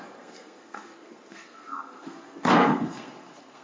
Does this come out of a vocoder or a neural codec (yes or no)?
yes